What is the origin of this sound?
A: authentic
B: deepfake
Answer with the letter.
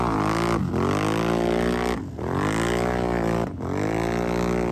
A